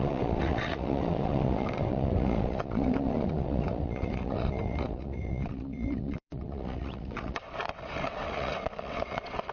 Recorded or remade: remade